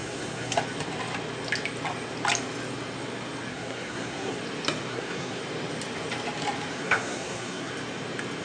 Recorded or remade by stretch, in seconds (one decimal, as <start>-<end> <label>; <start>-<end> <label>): 0.0-0.6 remade; 0.6-3.5 recorded; 3.5-4.4 remade; 4.4-4.9 recorded; 4.9-5.4 remade; 5.4-6.7 recorded; 6.7-7.7 remade; 7.7-8.4 recorded